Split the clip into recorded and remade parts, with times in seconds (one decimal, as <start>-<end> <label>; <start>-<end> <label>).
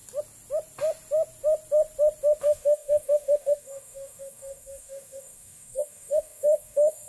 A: 0.0-2.4 recorded; 2.4-7.1 remade